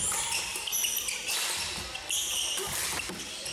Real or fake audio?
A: real